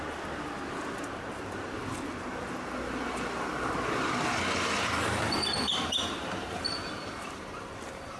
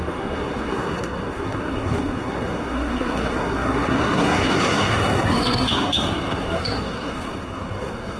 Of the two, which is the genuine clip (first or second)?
first